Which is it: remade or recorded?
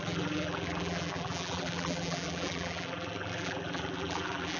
remade